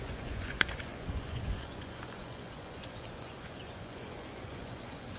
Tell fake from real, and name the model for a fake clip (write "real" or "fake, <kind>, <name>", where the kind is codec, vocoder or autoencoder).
fake, vocoder, Vocos